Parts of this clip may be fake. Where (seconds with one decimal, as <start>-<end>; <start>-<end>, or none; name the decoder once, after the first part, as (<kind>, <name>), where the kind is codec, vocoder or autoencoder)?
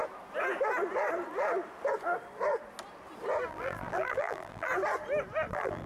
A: 3.5-4.7 (vocoder, BigVGAN v2); 5.5-5.9